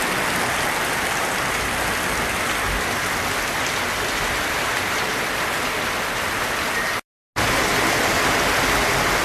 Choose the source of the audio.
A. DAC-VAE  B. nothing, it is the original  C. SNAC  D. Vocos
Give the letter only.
B